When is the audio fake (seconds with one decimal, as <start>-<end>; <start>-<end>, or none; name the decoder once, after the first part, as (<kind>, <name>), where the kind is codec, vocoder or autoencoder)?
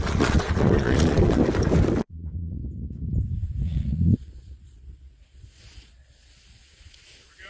0.0-1.4 (vocoder, Vocos); 2.0-2.6; 3.6-7.5